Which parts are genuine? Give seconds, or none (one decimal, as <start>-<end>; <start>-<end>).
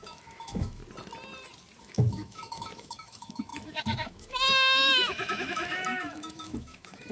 0.8-1.8